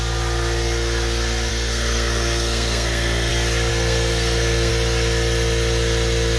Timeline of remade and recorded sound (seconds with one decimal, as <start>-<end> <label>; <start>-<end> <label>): 0.0-1.5 recorded; 1.5-3.3 remade; 3.3-3.7 recorded; 3.7-4.7 remade; 4.7-6.4 recorded